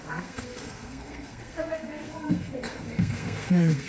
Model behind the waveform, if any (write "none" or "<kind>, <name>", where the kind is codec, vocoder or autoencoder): codec, SNAC